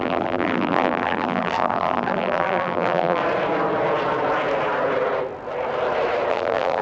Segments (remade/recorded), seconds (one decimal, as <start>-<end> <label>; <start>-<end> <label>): 0.0-3.2 remade; 3.2-6.3 recorded; 6.3-6.8 remade